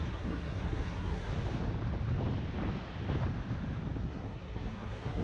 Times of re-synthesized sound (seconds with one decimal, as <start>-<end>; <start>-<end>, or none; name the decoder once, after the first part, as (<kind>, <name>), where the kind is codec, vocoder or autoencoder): 0.0-1.3 (codec, SNAC); 4.0-5.2